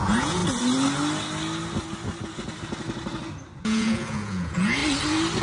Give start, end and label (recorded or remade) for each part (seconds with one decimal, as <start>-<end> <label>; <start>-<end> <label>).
0.0-0.4 remade; 0.4-3.6 recorded; 3.6-4.8 remade; 4.8-5.4 recorded